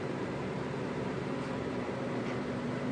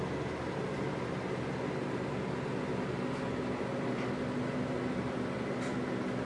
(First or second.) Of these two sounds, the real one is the second